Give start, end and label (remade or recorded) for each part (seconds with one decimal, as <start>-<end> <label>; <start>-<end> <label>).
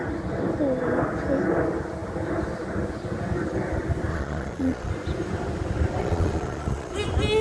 0.0-4.1 recorded; 4.1-4.9 remade; 4.9-6.0 recorded; 6.0-6.9 remade; 6.9-7.4 recorded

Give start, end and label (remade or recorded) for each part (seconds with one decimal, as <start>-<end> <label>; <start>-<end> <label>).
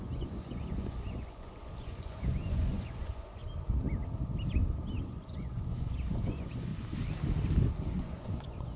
0.0-3.4 remade; 3.4-5.0 recorded; 5.0-6.7 remade; 6.7-7.9 recorded; 7.9-8.8 remade